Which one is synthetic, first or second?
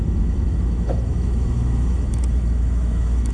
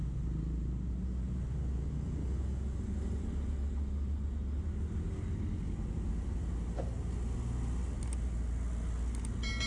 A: first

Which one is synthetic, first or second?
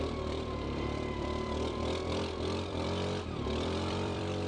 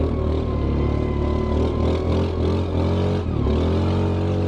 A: first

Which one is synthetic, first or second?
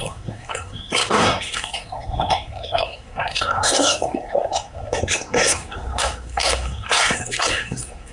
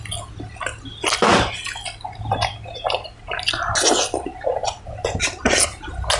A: first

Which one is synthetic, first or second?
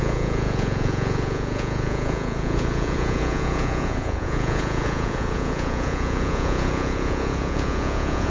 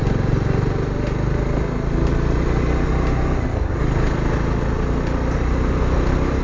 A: first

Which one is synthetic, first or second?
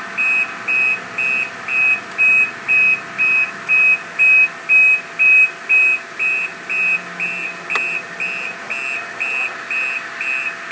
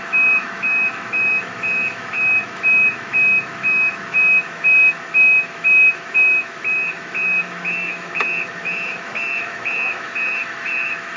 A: second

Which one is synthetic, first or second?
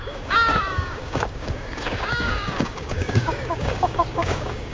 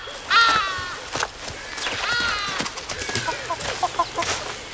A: first